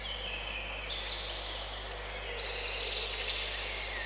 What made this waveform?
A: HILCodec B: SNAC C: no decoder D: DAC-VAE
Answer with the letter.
C